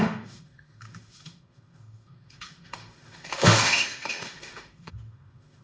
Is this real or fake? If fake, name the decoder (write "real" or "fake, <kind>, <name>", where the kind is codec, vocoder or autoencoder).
fake, autoencoder, DAC-VAE